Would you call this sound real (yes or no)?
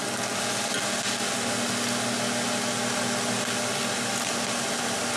yes